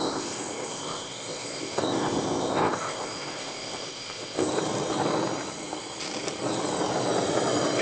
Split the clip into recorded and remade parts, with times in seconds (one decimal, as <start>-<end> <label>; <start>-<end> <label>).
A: 0.0-4.5 remade; 4.5-7.8 recorded